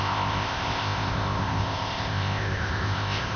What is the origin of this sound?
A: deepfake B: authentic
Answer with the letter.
A